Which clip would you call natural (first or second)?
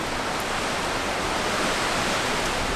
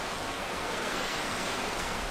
first